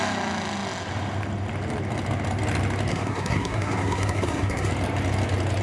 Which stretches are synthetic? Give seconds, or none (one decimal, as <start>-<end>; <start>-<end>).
2.9-4.7